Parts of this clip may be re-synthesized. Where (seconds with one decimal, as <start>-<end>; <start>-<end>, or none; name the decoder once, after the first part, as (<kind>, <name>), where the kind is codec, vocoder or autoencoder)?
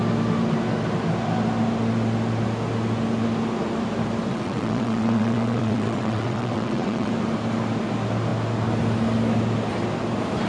4.3-7.1 (vocoder, WaveNeXt)